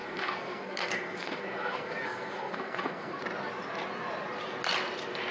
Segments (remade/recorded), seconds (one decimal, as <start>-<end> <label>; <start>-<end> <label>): 0.0-3.2 remade; 3.2-5.3 recorded